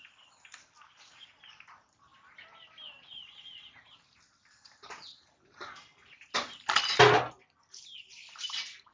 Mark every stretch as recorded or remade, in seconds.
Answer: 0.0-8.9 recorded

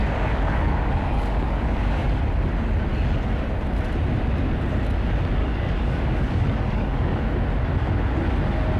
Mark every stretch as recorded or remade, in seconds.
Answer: 0.0-2.2 remade; 2.2-5.4 recorded; 5.4-7.2 remade; 7.2-8.8 recorded